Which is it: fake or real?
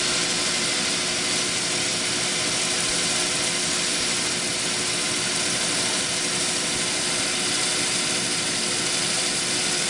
real